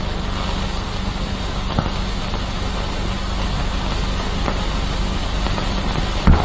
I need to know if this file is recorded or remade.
recorded